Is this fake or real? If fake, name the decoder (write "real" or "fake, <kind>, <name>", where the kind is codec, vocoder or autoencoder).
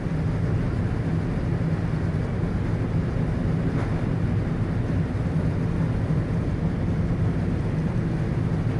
real